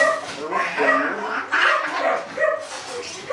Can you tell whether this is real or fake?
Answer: real